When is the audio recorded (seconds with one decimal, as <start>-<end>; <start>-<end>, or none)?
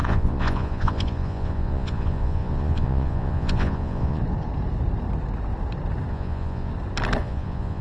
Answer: 4.2-6.1; 6.7-7.2